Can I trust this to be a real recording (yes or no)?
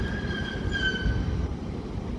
yes